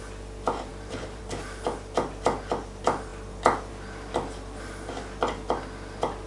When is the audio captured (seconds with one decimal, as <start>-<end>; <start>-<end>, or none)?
0.0-0.7; 1.2-6.3